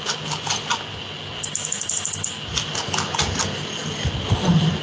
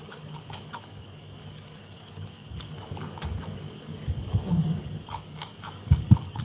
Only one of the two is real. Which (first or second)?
first